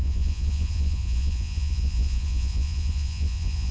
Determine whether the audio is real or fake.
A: fake